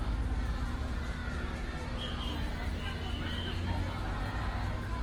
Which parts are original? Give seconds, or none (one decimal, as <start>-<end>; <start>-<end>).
0.0-5.0